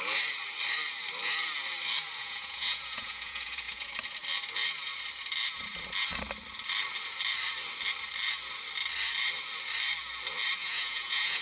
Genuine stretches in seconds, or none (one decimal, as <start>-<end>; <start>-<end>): 0.0-2.2; 3.9-10.6